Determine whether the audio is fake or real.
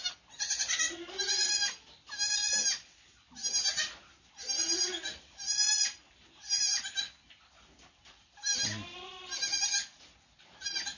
real